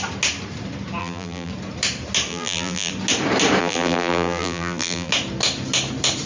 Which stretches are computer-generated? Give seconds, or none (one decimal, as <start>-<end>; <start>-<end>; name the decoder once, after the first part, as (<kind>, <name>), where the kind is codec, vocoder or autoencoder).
1.0-1.5 (vocoder, BigVGAN v2); 2.3-2.9; 3.6-5.1